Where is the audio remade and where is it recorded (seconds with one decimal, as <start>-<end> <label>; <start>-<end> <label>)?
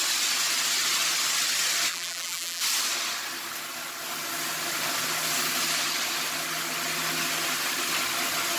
0.0-1.9 recorded; 1.9-2.6 remade; 2.6-8.6 recorded